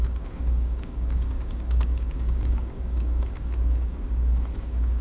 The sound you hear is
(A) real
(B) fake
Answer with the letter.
B